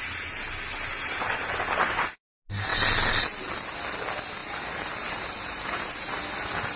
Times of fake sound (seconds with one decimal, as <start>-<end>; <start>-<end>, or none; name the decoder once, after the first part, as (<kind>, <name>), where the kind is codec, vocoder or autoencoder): 0.9-1.6 (vocoder, BigVGAN v2); 4.4-6.2